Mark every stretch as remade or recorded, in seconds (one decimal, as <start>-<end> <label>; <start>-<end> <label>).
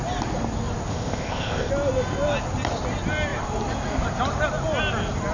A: 0.0-0.9 recorded; 0.9-1.7 remade; 1.7-5.3 recorded